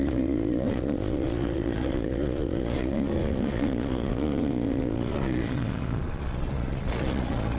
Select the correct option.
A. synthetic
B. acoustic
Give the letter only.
A